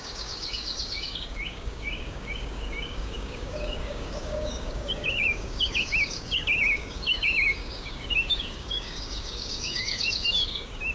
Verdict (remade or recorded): remade